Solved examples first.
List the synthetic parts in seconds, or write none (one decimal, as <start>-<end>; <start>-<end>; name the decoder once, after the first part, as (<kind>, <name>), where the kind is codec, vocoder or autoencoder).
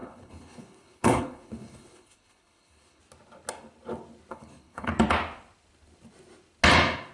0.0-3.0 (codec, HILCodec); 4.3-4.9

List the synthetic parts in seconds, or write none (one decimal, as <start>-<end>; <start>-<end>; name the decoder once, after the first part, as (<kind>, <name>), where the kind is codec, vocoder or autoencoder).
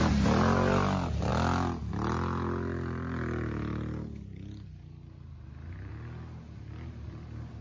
none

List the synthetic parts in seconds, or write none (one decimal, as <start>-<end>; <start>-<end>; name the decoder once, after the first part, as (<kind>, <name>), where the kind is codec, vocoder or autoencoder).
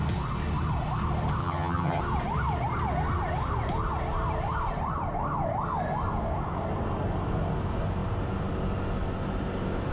1.4-2.0 (vocoder, HiFi-GAN)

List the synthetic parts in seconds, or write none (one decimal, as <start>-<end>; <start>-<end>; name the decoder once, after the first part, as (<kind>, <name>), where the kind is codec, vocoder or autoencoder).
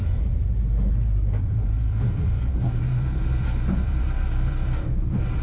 0.0-5.4 (vocoder, BigVGAN v2)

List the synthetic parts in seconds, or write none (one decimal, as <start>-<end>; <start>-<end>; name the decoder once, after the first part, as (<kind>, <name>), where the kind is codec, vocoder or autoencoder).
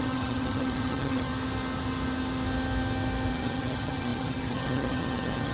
0.0-1.3 (vocoder, HiFi-GAN); 3.3-5.5